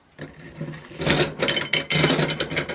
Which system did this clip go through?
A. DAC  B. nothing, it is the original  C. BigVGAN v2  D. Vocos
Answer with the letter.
B